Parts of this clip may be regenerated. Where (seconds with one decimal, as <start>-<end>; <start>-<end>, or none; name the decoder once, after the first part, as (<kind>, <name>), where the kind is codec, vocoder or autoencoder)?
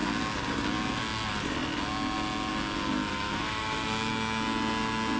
3.1-4.1 (autoencoder, DAC-VAE)